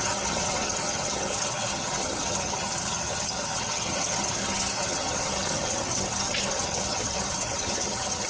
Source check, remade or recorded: remade